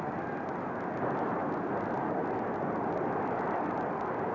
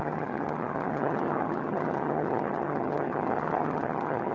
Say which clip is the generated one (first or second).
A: second